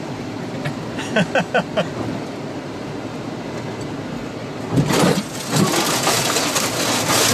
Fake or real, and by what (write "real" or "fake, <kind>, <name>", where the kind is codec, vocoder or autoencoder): real